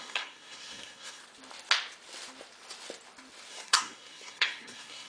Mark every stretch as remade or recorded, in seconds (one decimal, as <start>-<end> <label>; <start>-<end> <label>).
0.0-1.2 remade; 1.2-3.5 recorded; 3.5-5.1 remade